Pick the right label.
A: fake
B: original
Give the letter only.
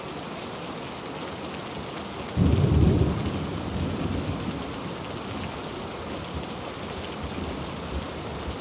B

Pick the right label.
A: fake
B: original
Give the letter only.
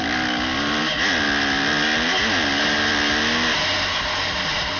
B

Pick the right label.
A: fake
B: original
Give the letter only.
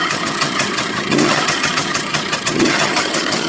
A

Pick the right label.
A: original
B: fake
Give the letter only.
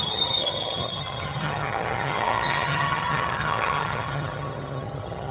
B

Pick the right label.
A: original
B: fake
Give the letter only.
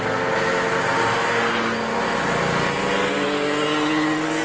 A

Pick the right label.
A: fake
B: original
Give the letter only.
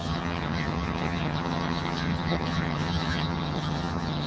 A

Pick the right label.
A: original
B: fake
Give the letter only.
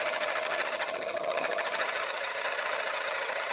B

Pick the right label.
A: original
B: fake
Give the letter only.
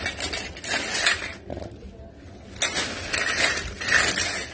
A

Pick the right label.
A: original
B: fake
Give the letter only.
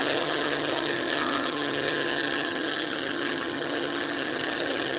B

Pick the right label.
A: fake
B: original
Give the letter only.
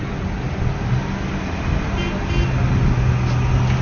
B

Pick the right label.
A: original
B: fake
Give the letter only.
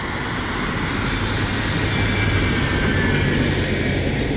A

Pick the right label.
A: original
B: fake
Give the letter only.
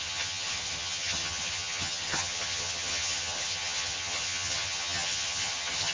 B